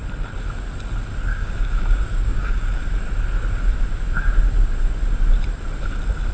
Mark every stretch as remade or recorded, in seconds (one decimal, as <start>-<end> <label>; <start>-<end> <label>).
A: 0.0-1.3 recorded; 1.3-2.8 remade; 2.8-6.3 recorded